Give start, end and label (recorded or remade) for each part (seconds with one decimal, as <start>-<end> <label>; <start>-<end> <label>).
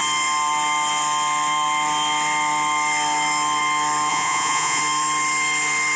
0.0-4.1 recorded; 4.1-4.8 remade; 4.8-6.0 recorded